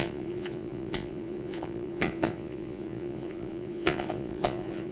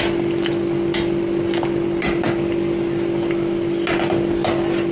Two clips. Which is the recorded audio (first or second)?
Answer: second